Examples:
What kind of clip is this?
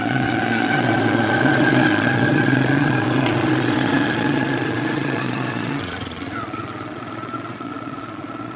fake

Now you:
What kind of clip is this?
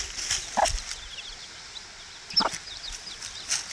real